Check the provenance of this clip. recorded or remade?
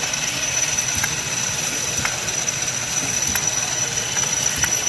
recorded